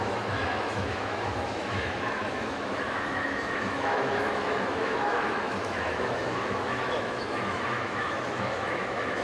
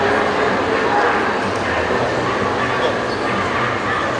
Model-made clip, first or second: first